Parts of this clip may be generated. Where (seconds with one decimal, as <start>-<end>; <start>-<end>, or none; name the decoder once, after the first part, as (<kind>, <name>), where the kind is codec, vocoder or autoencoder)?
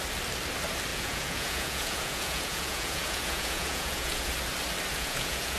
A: 0.9-4.3 (vocoder, Vocos); 4.9-5.6